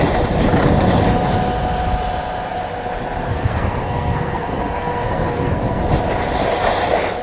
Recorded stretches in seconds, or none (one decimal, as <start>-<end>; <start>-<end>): 0.0-3.2; 5.8-7.2